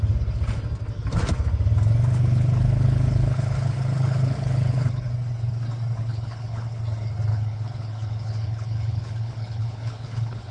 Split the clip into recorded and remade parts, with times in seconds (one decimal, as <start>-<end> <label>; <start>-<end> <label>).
0.0-2.1 recorded; 2.1-5.1 remade; 5.1-6.0 recorded; 6.0-6.8 remade; 6.8-7.3 recorded; 7.3-10.5 remade